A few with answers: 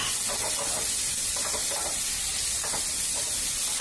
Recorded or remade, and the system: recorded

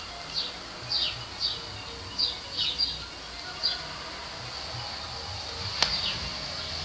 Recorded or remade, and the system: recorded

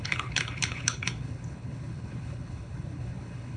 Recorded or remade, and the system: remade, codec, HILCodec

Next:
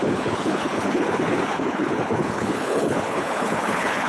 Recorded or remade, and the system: remade, codec, HILCodec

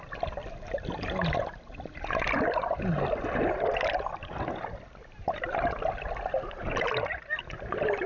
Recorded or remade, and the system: recorded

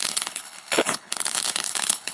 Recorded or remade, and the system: remade, codec, HILCodec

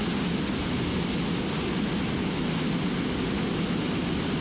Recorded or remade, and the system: recorded